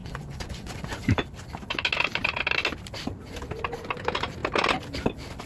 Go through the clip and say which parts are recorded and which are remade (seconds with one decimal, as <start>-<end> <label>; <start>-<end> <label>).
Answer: 0.0-1.1 remade; 1.1-5.5 recorded